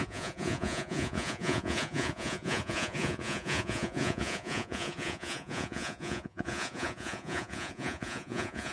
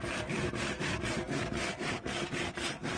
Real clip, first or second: second